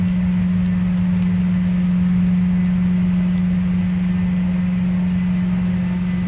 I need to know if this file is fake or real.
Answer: real